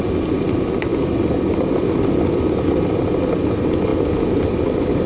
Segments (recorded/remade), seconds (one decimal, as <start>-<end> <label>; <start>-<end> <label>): 0.0-5.1 recorded